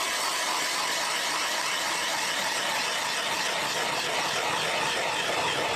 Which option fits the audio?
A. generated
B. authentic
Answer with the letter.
B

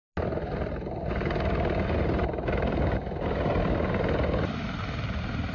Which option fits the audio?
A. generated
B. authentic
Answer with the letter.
B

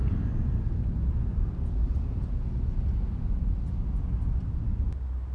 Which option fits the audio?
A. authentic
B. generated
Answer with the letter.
A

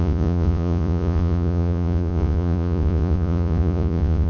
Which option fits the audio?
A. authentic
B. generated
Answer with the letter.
B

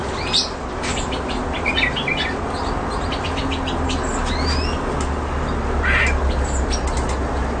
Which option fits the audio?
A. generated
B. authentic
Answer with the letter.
B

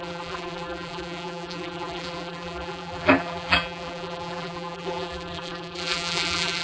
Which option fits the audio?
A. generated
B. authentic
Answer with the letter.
A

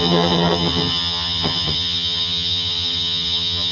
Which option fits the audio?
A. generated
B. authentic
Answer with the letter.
A